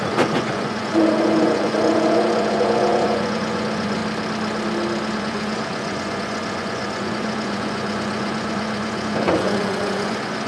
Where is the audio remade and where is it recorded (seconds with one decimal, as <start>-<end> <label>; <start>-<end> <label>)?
0.0-4.0 remade; 4.0-5.2 recorded; 5.2-10.5 remade